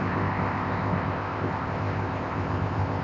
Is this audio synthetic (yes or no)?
yes